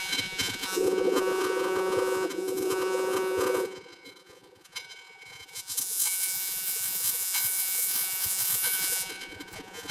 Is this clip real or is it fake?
fake